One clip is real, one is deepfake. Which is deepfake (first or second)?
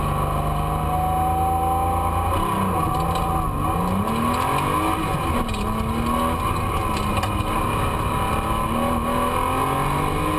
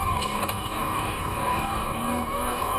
second